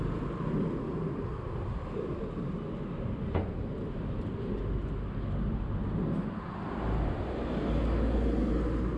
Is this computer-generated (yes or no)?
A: no